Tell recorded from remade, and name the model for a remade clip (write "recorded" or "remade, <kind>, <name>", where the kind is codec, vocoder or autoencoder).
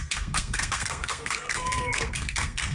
remade, codec, SNAC